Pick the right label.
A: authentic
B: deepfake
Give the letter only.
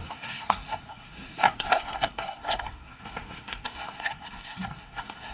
B